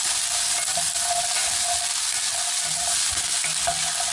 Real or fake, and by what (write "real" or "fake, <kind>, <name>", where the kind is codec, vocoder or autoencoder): real